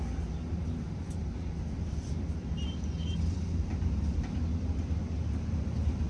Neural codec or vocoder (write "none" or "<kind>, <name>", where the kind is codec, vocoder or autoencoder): none